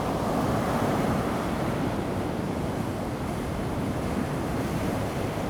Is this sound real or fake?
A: fake